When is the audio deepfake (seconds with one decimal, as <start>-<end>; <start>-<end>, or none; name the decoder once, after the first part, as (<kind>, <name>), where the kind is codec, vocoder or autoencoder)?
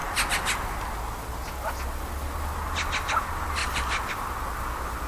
3.6-4.1 (vocoder, BigVGAN v2)